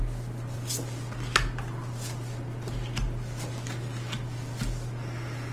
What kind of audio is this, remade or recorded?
recorded